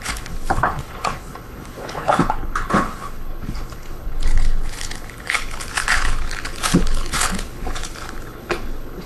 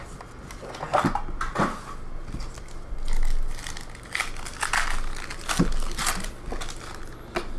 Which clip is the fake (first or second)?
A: first